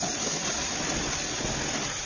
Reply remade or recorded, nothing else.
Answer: recorded